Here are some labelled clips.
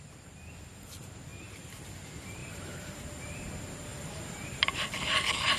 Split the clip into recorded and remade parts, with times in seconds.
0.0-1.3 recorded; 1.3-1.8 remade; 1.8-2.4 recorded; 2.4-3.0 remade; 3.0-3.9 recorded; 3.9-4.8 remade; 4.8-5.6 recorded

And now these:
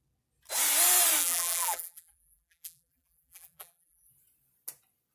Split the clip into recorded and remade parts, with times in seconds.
0.0-1.2 recorded; 1.2-4.1 remade; 4.1-5.1 recorded